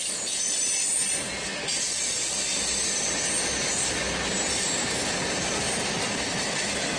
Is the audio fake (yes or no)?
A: no